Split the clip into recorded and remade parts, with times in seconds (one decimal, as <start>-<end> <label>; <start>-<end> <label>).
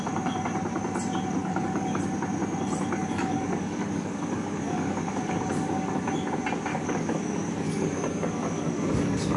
0.0-1.4 recorded; 1.4-2.0 remade; 2.0-3.0 recorded; 3.0-6.0 remade; 6.0-6.7 recorded; 6.7-9.4 remade